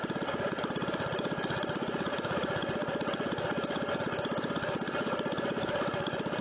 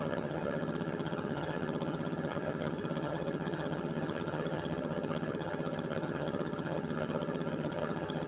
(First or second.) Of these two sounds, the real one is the first